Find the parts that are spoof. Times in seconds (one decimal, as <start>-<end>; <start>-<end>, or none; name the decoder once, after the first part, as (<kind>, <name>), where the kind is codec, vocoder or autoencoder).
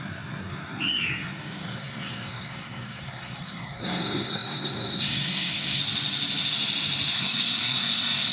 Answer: 0.0-5.8 (codec, SNAC); 7.1-8.3